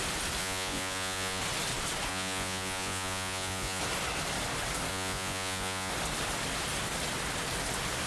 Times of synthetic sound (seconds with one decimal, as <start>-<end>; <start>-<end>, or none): 0.4-1.4; 2.1-3.8; 4.9-5.9

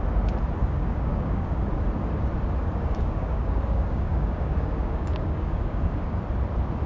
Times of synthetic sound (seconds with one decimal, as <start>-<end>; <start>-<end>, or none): 0.6-1.7; 2.6-6.2

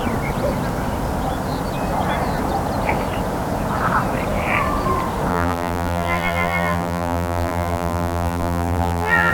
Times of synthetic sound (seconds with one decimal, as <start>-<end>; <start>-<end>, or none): 5.3-9.3

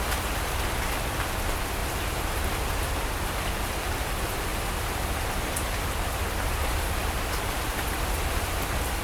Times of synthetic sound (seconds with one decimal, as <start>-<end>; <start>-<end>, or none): 1.8-2.7; 4.5-8.6

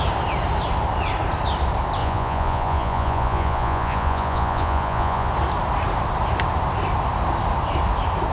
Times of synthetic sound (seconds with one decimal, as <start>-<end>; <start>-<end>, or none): 2.0-5.3